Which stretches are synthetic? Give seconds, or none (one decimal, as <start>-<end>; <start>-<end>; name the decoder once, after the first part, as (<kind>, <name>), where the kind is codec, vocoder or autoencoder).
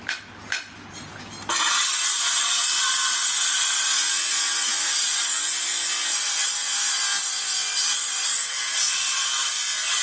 2.1-5.2 (vocoder, Vocos); 8.3-9.3